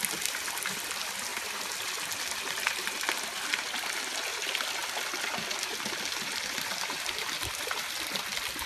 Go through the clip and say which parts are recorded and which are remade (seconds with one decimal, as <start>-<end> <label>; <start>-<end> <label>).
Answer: 0.0-4.8 recorded; 4.8-8.2 remade; 8.2-8.7 recorded